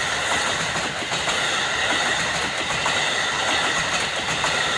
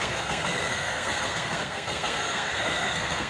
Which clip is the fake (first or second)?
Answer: second